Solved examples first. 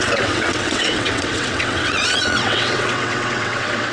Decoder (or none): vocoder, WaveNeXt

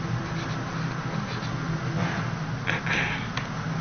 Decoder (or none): none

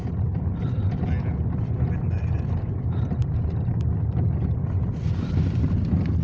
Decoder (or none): none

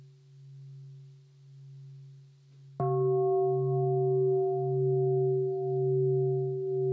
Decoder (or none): none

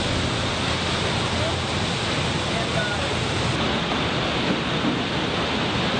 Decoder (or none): none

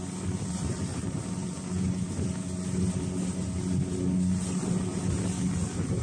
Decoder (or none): none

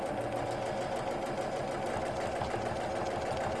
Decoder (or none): none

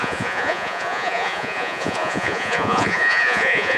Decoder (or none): vocoder, Vocos